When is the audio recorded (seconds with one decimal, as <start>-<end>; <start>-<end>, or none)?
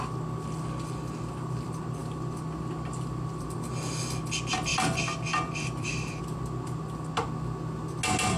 0.0-2.0; 4.0-4.7; 6.2-8.4